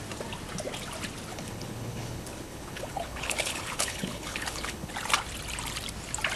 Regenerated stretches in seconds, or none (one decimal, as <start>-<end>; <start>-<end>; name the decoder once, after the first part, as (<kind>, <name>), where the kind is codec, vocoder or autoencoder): 1.3-4.9 (codec, HILCodec)